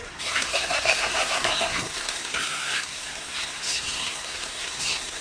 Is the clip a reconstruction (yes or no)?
yes